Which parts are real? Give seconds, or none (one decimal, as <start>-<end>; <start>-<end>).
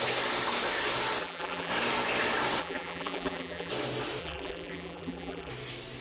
0.0-1.2; 1.7-2.6; 3.7-4.2; 5.5-6.0